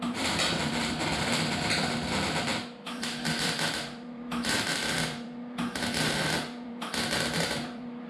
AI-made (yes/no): yes